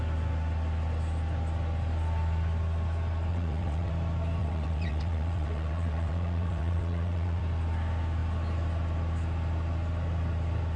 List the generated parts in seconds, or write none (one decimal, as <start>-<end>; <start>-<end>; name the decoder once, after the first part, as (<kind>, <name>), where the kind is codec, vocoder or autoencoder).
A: 3.3-3.9 (vocoder, WaveNeXt); 4.4-7.4